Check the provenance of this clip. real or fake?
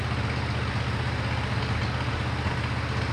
real